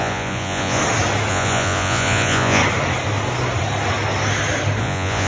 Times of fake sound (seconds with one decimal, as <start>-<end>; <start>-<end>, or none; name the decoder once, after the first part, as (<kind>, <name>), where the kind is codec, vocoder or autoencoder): 0.0-0.8 (vocoder, Vocos); 1.3-2.6; 4.8-5.3